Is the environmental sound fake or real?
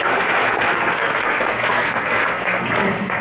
fake